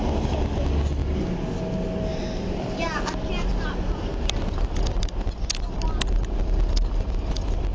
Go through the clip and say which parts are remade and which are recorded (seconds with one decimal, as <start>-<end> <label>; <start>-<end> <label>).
0.0-2.1 recorded; 2.1-3.5 remade; 3.5-4.1 recorded; 4.1-7.3 remade; 7.3-7.7 recorded